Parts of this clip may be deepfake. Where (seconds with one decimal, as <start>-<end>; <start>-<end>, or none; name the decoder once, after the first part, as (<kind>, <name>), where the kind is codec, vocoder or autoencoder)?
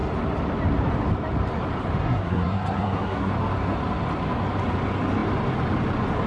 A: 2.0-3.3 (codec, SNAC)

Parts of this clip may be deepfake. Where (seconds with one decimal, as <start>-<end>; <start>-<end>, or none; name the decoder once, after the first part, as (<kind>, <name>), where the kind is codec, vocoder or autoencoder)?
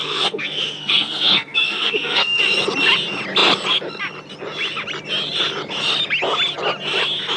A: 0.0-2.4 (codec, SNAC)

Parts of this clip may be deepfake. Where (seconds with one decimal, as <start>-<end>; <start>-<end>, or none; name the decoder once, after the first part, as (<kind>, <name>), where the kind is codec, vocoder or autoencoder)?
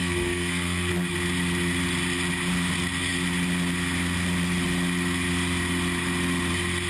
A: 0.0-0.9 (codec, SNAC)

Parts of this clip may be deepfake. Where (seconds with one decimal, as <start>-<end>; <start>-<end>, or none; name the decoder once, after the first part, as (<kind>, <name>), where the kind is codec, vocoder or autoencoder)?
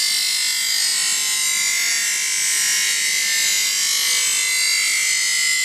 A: none